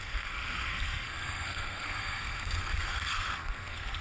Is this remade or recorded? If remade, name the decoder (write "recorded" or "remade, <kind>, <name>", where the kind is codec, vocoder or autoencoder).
remade, codec, SNAC